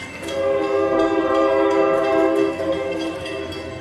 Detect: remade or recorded remade